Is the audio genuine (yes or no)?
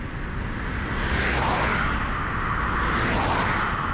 yes